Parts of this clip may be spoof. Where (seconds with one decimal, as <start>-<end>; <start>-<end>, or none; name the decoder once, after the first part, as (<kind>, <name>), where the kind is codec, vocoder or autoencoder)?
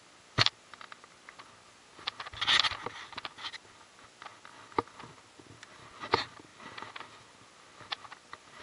6.5-7.1 (vocoder, BigVGAN v2)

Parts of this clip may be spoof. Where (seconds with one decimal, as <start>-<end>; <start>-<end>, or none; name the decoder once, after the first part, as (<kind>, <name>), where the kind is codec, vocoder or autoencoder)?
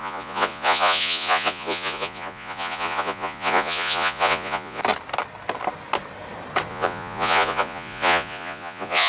0.0-4.8 (vocoder, Vocos); 6.7-9.1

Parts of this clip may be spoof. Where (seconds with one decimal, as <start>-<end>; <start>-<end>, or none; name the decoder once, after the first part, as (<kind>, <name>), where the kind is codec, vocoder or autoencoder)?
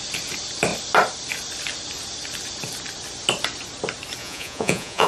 4.2-5.1 (vocoder, Vocos)